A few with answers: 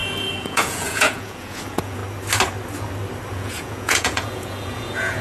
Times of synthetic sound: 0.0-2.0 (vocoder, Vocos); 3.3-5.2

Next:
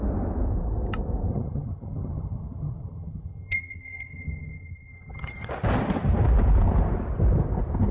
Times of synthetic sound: 1.3-5.5 (vocoder, HiFi-GAN)

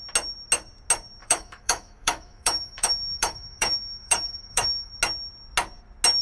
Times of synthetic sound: 1.2-4.9 (autoencoder, DAC-VAE)